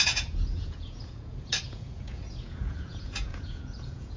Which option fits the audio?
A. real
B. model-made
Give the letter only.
B